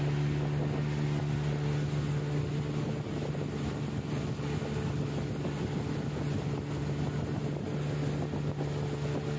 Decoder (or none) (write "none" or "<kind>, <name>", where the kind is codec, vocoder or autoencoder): none